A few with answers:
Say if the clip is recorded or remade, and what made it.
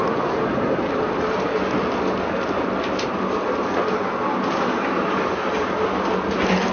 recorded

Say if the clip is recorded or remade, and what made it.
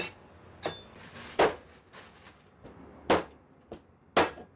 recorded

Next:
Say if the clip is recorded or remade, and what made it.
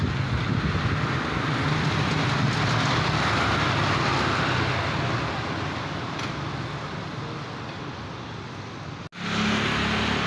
recorded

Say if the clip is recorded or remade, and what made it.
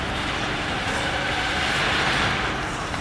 remade, vocoder, BigVGAN v2